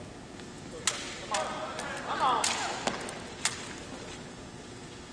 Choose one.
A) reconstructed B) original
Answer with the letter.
B